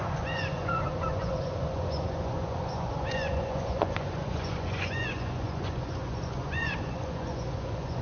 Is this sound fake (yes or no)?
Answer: yes